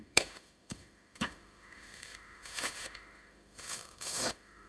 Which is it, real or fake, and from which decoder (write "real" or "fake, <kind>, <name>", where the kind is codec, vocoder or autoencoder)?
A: fake, autoencoder, DAC-VAE